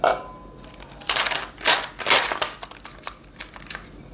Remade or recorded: recorded